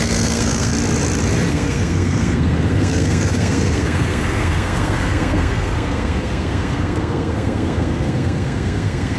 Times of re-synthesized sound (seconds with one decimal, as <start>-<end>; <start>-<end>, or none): 0.0-0.7; 1.5-9.2